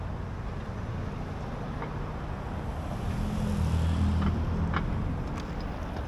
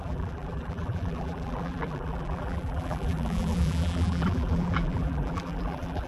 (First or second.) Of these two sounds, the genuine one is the first